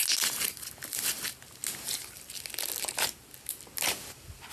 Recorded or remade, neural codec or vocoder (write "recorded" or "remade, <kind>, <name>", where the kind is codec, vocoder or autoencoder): recorded